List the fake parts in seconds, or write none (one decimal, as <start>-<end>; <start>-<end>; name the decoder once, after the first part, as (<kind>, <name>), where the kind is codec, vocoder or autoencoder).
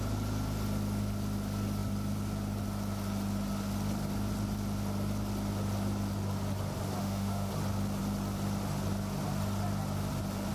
7.0-7.5 (autoencoder, DAC-VAE)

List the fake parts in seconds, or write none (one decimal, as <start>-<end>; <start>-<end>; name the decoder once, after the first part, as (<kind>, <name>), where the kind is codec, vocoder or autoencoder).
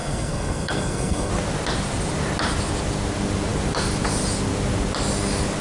0.0-1.3 (codec, SNAC)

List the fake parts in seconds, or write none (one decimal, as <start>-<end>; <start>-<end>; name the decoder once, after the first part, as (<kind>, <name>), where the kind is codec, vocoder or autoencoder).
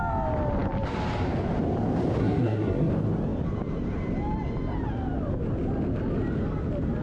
2.2-2.9 (codec, SNAC)